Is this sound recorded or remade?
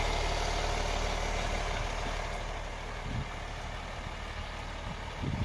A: recorded